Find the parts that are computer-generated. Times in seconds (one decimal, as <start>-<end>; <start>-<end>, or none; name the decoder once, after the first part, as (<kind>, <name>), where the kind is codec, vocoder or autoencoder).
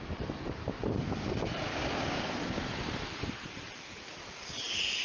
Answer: 1.7-2.6 (codec, DAC)